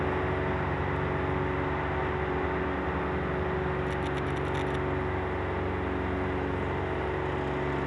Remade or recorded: recorded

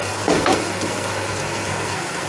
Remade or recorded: remade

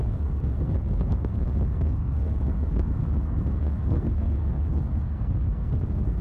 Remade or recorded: remade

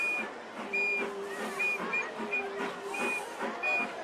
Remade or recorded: recorded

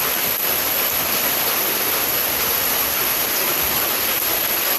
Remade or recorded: recorded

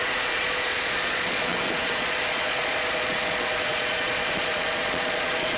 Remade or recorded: remade